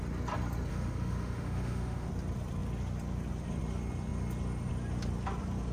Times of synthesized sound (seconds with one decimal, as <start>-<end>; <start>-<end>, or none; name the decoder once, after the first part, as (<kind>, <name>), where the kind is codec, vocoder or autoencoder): 0.7-2.1 (autoencoder, DAC-VAE)